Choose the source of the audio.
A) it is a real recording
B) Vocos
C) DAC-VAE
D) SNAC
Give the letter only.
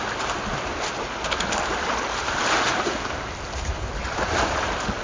A